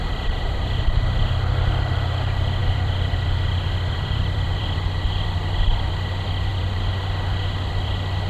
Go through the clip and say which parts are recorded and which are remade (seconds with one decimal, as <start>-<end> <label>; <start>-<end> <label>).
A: 0.0-2.6 recorded; 2.6-5.2 remade; 5.2-8.3 recorded